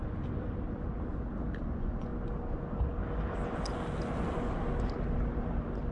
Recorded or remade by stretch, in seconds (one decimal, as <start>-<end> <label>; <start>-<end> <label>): 0.0-1.6 recorded; 1.6-2.1 remade; 2.1-5.9 recorded